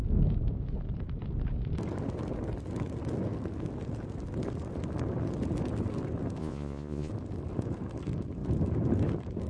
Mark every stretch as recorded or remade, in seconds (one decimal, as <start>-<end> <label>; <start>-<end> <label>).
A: 0.0-6.4 recorded; 6.4-7.1 remade; 7.1-9.5 recorded